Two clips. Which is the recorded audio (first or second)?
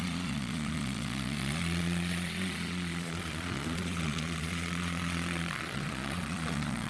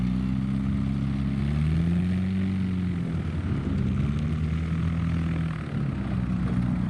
second